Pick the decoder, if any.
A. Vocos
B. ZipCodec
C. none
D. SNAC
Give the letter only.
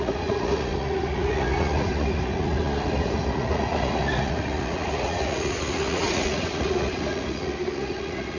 A